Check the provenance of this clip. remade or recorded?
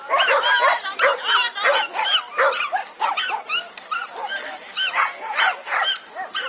recorded